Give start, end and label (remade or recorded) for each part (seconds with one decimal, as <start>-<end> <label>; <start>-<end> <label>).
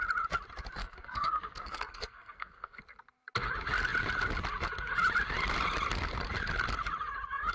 0.0-0.8 recorded; 0.8-2.8 remade; 2.8-7.5 recorded